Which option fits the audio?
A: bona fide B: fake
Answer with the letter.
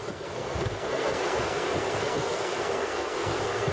B